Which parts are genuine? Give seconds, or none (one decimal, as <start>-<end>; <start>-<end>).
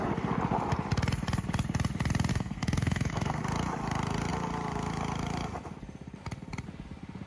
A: 0.0-2.3; 3.4-7.3